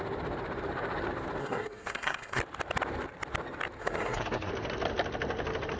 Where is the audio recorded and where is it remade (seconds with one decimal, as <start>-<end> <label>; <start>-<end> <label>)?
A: 0.0-1.4 recorded; 1.4-2.4 remade; 2.4-3.8 recorded; 3.8-4.5 remade; 4.5-5.8 recorded